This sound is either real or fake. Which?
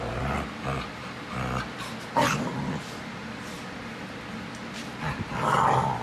fake